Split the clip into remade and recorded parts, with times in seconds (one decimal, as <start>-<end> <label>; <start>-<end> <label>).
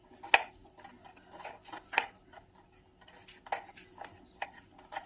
0.0-5.1 recorded